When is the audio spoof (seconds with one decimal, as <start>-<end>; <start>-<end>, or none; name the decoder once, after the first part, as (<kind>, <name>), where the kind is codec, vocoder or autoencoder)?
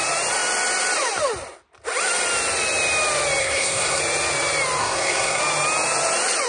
3.4-4.0 (codec, SNAC); 4.8-5.4